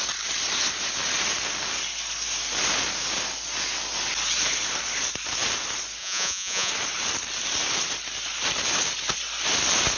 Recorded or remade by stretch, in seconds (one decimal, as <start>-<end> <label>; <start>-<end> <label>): 0.0-6.0 recorded; 6.0-6.7 remade; 6.7-10.0 recorded